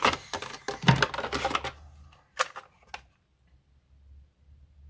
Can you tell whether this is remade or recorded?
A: recorded